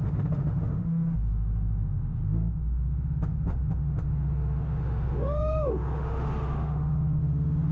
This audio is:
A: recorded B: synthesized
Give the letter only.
B